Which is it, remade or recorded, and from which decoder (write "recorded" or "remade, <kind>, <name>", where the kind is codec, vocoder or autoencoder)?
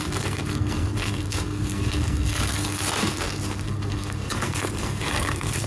remade, codec, SNAC